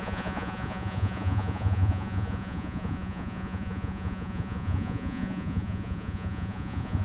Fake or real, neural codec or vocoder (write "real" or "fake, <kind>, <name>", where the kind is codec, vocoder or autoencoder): fake, vocoder, Vocos